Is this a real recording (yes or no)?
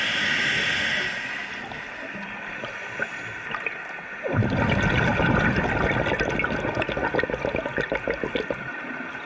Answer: yes